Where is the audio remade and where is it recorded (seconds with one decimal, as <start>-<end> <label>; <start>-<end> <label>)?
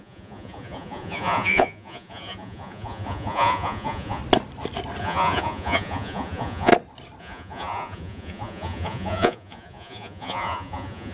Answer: 0.0-4.2 remade; 4.2-5.0 recorded; 5.0-6.7 remade; 6.7-7.2 recorded; 7.2-11.1 remade